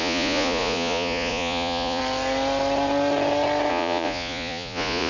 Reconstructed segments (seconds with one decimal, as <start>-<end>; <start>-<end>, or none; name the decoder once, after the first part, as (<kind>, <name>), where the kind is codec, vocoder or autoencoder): 0.0-2.0 (vocoder, Vocos); 3.7-5.1